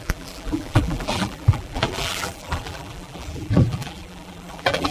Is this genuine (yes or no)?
no